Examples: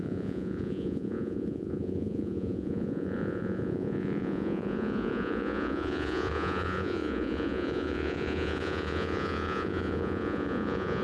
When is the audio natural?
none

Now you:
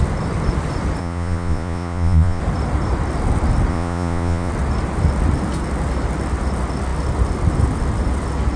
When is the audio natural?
0.0-1.0; 2.4-3.7; 4.5-8.6

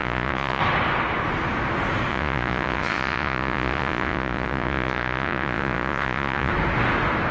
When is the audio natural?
0.6-2.1; 6.5-7.3